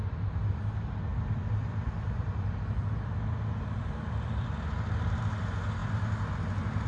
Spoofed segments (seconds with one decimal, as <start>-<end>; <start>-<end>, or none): 1.1-5.2